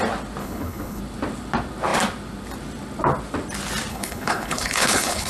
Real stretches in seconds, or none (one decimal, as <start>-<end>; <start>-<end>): 0.0-0.4; 1.0-3.9